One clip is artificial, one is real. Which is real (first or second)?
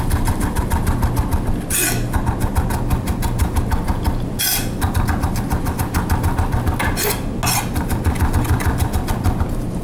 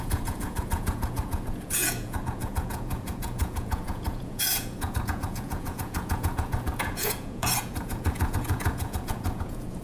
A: first